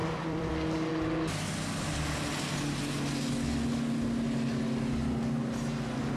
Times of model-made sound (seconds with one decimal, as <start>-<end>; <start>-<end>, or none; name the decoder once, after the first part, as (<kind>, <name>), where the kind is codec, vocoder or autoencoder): 0.0-0.5 (vocoder, BigVGAN v2)